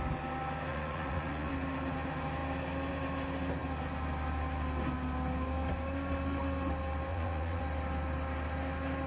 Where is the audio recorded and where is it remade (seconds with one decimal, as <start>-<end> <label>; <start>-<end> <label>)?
0.0-0.7 recorded; 0.7-1.5 remade; 1.5-7.1 recorded; 7.1-7.6 remade; 7.6-9.1 recorded

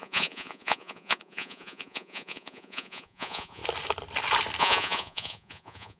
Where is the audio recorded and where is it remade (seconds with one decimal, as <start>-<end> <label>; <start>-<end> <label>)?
0.0-3.6 remade; 3.6-4.6 recorded; 4.6-6.0 remade